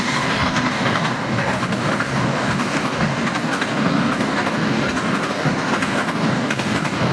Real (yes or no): no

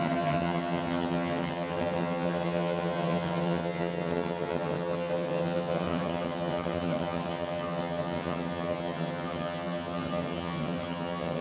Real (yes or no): no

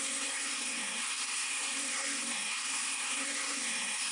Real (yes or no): no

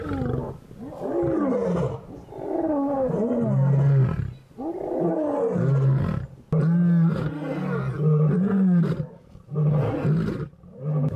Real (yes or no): yes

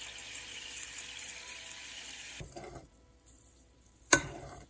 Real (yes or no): no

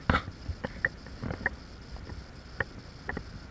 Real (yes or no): yes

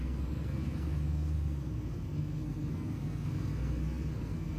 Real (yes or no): no